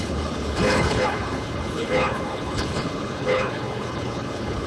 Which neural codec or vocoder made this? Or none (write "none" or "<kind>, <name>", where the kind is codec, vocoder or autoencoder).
codec, HILCodec